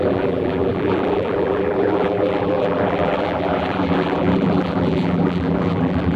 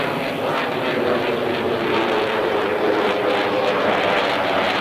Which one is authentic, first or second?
second